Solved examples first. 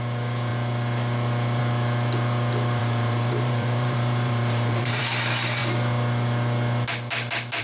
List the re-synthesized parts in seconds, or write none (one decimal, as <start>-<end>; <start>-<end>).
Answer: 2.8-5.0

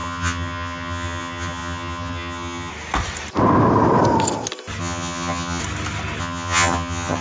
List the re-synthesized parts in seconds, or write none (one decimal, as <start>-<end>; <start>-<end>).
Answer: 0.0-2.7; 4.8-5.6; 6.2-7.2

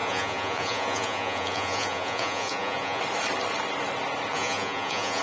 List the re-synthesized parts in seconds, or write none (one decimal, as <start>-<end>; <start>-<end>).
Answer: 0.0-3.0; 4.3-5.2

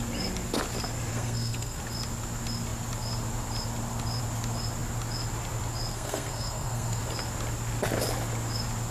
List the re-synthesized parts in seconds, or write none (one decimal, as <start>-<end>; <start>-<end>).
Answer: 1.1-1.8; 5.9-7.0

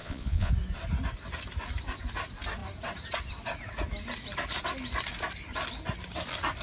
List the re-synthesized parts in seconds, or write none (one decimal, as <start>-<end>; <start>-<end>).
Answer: 0.0-0.5

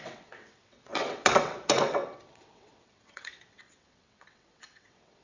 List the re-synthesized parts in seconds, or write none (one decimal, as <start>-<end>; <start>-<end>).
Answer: 0.0-5.2